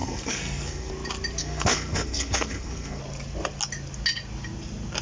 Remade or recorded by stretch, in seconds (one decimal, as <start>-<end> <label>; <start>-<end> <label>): 0.0-0.9 remade; 0.9-1.4 recorded; 1.4-3.0 remade; 3.0-5.0 recorded